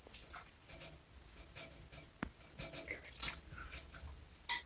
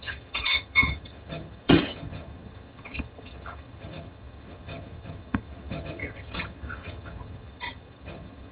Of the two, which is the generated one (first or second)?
second